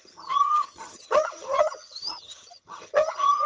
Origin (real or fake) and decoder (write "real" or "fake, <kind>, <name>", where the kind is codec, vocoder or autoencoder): fake, vocoder, HiFi-GAN